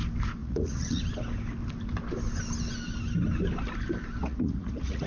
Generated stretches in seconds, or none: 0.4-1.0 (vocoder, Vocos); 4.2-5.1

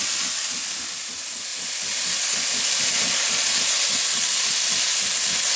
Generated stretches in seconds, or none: none

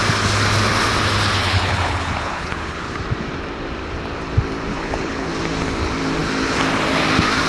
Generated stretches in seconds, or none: 1.4-3.0 (codec, HILCodec); 4.7-5.3

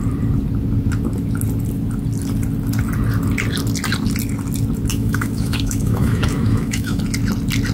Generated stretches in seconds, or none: 4.9-7.0 (autoencoder, DAC-VAE)

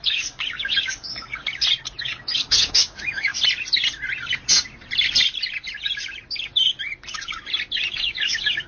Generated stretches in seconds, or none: 0.0-1.5 (codec, DAC); 2.0-3.3; 7.9-8.7